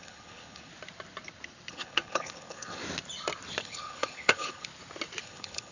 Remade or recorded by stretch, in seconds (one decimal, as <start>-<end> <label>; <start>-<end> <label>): 0.0-0.7 remade; 0.7-1.7 recorded; 1.7-2.8 remade; 2.8-3.6 recorded; 3.6-4.7 remade; 4.7-5.2 recorded; 5.2-5.7 remade